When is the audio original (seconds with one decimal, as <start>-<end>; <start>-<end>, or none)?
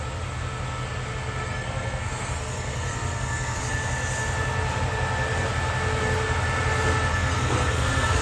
0.0-1.4; 3.6-7.1